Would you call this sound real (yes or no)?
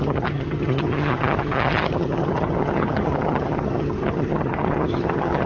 no